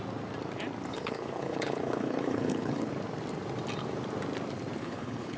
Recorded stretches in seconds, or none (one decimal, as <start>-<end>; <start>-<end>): 0.0-0.9; 2.9-4.8